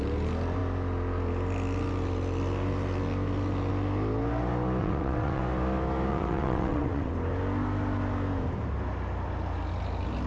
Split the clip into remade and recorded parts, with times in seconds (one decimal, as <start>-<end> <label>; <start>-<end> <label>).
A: 0.0-4.8 recorded; 4.8-5.4 remade; 5.4-6.1 recorded; 6.1-7.1 remade; 7.1-10.3 recorded

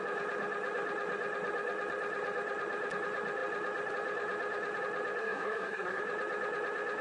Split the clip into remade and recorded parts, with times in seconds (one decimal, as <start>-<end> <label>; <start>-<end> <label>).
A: 0.0-5.2 recorded; 5.2-6.0 remade; 6.0-7.0 recorded

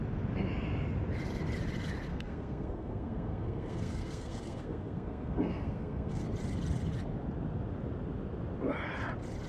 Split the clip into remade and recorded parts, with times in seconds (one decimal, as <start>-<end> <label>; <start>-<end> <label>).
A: 0.0-2.1 recorded; 2.1-6.2 remade; 6.2-9.5 recorded

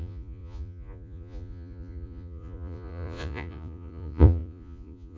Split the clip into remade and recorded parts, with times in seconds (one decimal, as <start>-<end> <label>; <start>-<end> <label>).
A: 0.0-5.2 remade

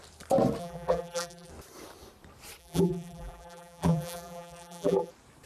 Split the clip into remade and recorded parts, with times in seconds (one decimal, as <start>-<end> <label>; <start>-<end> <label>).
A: 0.0-0.6 recorded; 0.6-1.5 remade; 1.5-2.6 recorded; 2.6-5.1 remade; 5.1-5.5 recorded

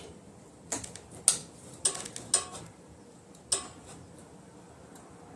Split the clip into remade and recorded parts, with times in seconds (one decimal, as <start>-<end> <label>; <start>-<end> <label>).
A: 0.0-5.4 recorded